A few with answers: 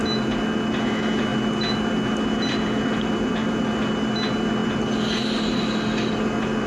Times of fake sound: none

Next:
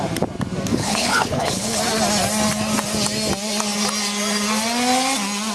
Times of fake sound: 0.7-1.8 (codec, HILCodec)